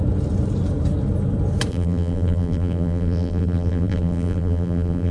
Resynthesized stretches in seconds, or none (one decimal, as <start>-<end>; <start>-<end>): 1.7-5.1